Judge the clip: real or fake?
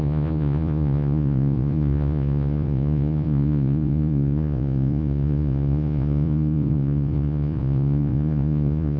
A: fake